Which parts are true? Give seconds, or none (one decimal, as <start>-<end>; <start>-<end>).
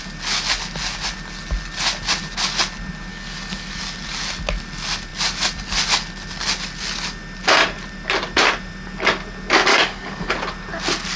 0.0-3.1; 3.8-9.7; 10.3-11.2